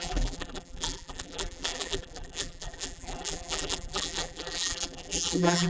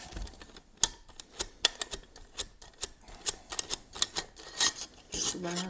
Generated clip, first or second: first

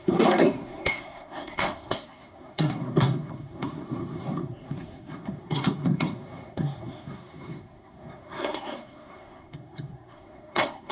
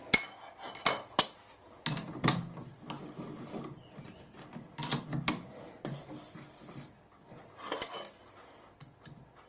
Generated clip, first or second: first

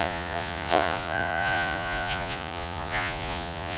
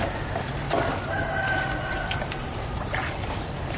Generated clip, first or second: first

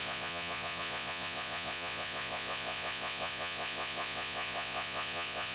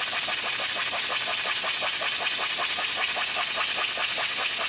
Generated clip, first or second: first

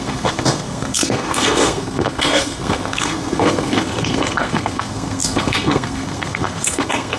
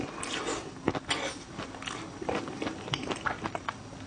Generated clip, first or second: first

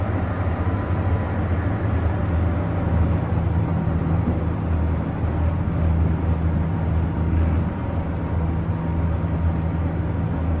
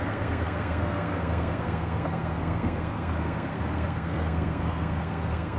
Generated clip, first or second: second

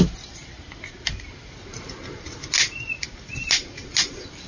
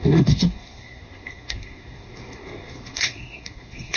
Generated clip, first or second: second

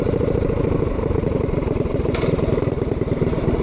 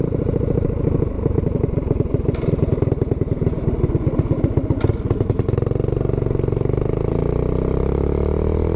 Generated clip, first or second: first